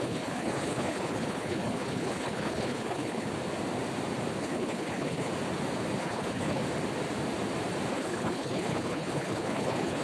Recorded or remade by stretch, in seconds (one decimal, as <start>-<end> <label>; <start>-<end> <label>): 0.0-3.3 remade; 3.3-4.4 recorded; 4.4-5.3 remade; 5.3-6.0 recorded; 6.0-6.6 remade; 6.6-7.9 recorded; 7.9-10.0 remade